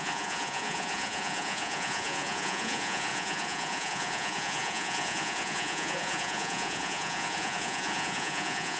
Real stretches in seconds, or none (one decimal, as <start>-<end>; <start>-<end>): none